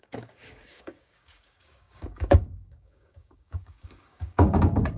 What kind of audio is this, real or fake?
fake